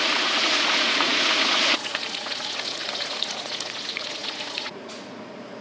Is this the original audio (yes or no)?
no